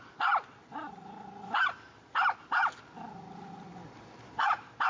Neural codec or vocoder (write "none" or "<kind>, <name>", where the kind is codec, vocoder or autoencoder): none